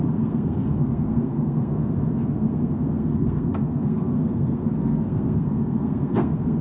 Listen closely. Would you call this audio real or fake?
fake